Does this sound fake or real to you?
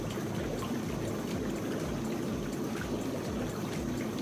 real